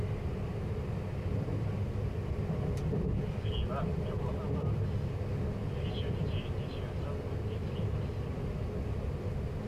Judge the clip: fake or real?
real